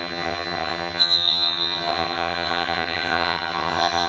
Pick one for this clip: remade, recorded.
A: remade